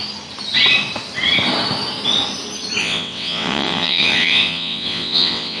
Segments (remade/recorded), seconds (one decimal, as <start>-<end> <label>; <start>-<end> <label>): 0.0-2.8 recorded; 2.8-5.6 remade